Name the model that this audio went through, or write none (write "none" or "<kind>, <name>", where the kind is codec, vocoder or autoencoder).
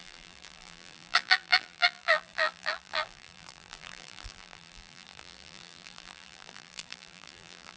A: vocoder, BigVGAN v2